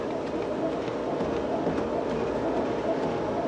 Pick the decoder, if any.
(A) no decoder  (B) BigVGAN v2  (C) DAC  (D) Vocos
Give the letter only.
A